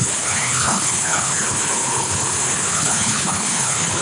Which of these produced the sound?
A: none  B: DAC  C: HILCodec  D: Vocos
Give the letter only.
C